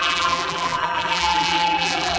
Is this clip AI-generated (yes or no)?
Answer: yes